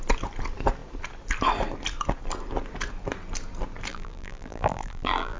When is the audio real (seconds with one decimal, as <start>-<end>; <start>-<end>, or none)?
0.0-3.9